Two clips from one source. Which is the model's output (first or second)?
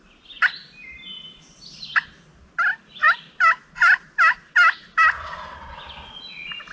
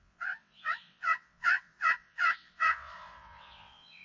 second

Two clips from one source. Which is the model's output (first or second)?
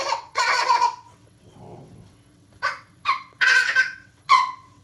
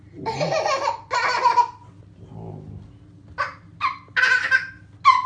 first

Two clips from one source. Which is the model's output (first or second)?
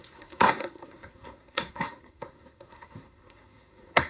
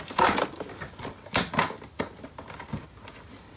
first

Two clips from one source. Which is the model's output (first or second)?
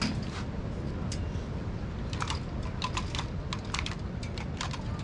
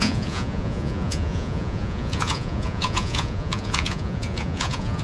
second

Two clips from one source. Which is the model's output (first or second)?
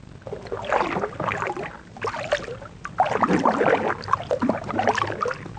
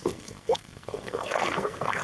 second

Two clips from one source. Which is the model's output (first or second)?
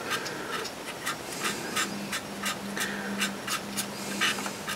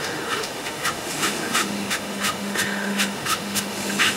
second